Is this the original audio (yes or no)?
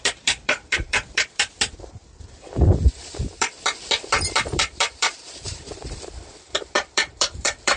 no